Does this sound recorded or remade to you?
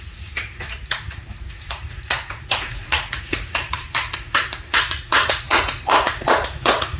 remade